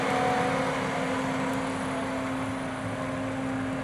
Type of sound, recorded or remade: recorded